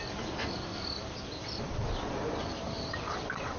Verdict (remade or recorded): remade